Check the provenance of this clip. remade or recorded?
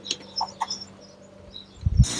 recorded